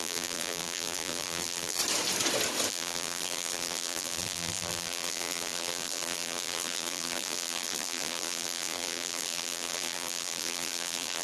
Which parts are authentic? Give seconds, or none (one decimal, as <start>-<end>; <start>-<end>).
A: 1.8-2.7